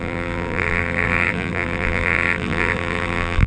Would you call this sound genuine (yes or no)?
no